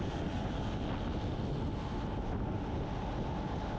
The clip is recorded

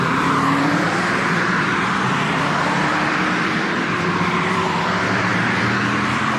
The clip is remade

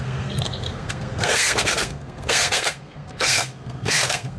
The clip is remade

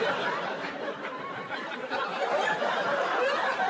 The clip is remade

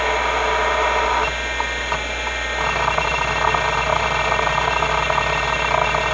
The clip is recorded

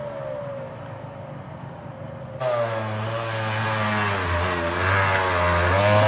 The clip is recorded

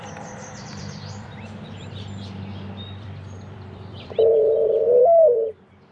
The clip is remade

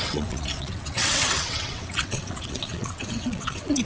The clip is remade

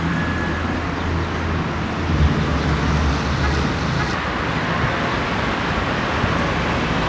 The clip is recorded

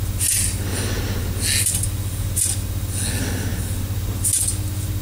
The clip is recorded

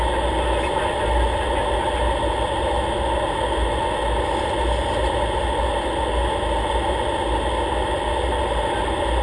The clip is recorded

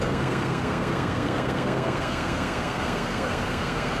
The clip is remade